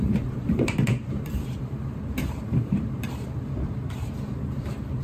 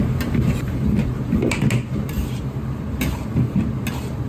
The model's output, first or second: first